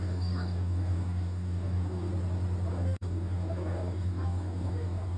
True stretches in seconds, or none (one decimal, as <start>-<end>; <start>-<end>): 2.1-2.7